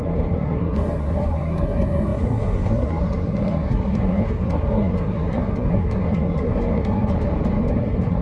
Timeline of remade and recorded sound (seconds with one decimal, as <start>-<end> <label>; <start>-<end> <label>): 0.0-7.1 remade; 7.1-7.7 recorded; 7.7-8.2 remade

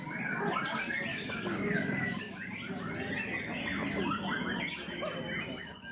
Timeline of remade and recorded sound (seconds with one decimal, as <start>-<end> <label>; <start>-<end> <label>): 0.0-1.1 recorded; 1.1-2.3 remade; 2.3-5.9 recorded

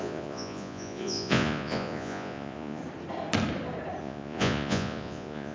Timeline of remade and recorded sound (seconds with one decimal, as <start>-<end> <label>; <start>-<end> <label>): 0.0-2.8 remade; 2.8-4.0 recorded; 4.0-5.5 remade

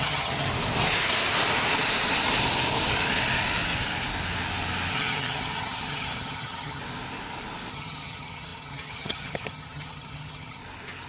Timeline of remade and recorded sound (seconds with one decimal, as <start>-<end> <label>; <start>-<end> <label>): 0.0-0.5 remade; 0.5-4.9 recorded; 4.9-6.8 remade; 6.8-7.7 recorded; 7.7-10.6 remade; 10.6-11.1 recorded